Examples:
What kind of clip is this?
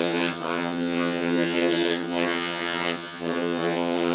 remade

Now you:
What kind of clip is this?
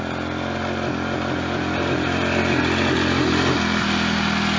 recorded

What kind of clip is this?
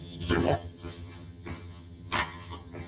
remade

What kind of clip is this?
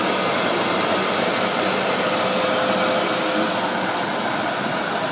recorded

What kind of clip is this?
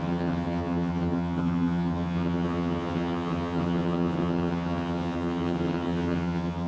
remade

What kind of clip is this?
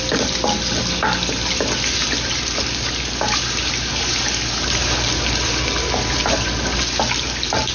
recorded